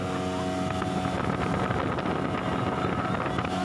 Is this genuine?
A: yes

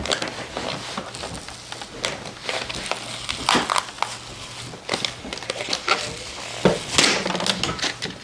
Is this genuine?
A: yes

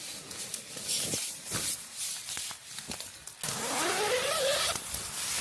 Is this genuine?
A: yes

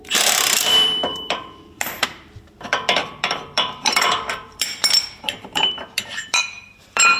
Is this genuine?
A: no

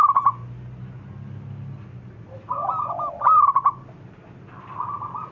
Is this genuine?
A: yes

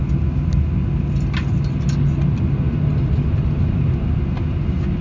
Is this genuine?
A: yes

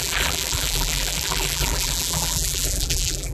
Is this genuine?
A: no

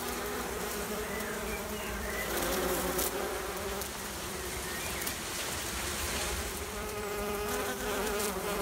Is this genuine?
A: no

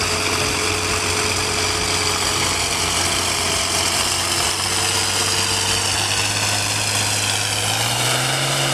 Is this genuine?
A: yes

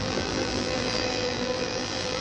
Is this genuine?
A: no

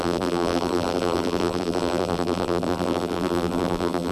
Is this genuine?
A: no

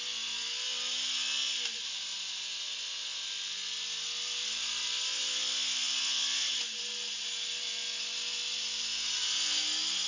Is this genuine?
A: yes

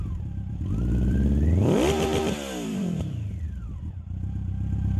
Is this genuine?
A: no